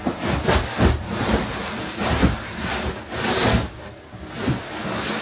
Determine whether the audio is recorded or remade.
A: recorded